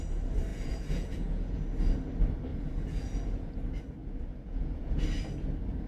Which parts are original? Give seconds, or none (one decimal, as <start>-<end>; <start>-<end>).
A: 0.0-0.5; 1.6-2.5; 3.6-4.0; 5.0-5.9